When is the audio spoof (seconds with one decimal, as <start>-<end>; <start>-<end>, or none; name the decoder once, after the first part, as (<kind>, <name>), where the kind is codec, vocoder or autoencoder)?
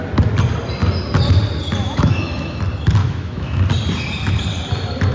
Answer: 1.8-2.6 (autoencoder, DAC-VAE); 3.0-3.6